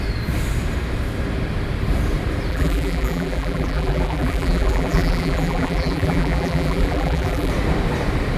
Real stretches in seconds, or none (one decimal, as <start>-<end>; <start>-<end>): 0.0-2.5; 7.5-8.4